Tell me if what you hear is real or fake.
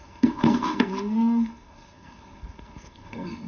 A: fake